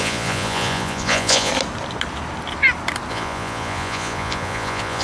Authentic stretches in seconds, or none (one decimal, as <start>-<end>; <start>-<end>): 1.5-3.1